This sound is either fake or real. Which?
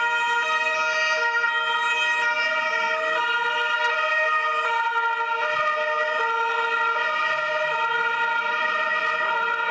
real